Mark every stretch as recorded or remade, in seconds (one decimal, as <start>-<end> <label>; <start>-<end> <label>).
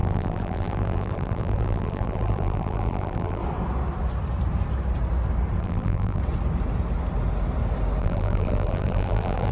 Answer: 0.0-3.4 remade; 3.4-5.6 recorded; 5.6-6.2 remade; 6.2-8.0 recorded; 8.0-9.5 remade